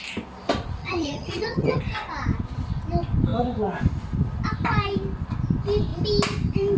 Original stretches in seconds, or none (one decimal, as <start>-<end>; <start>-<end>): 0.0-0.8; 1.8-6.8